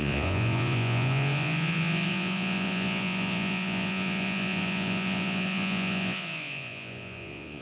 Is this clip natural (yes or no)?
no